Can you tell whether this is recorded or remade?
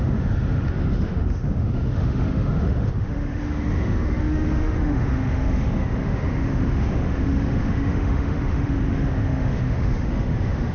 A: remade